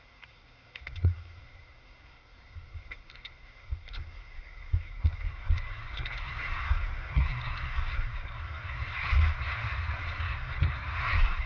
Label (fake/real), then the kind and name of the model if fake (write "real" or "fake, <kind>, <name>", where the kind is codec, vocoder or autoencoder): fake, codec, SNAC